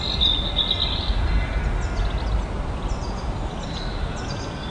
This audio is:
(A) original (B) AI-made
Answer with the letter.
A